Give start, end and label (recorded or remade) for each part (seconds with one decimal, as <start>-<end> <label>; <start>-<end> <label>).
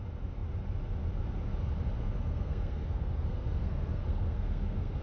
0.0-2.0 recorded; 2.0-5.0 remade